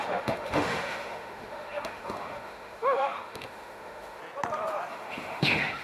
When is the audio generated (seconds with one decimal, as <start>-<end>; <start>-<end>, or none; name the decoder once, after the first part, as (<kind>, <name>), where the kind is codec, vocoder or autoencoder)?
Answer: 0.0-4.2 (autoencoder, DAC-VAE); 4.9-5.8